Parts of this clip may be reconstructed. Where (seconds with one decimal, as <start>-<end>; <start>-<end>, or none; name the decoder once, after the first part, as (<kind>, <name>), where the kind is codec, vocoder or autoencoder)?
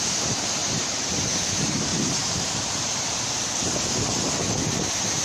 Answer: 0.6-1.3 (vocoder, BigVGAN v2); 1.9-3.8